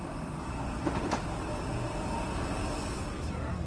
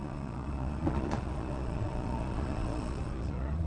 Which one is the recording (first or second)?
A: first